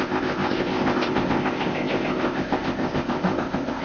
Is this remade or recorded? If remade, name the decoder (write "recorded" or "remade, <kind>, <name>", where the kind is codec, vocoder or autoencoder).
remade, codec, ZipCodec